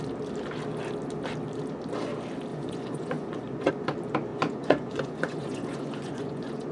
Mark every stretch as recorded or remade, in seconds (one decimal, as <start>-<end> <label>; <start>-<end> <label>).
0.0-2.5 recorded; 2.5-3.7 remade; 3.7-4.3 recorded; 4.3-6.7 remade